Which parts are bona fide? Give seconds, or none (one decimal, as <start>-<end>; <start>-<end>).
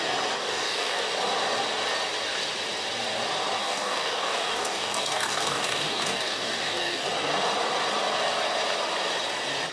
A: 0.0-0.4; 1.0-3.6; 7.1-9.7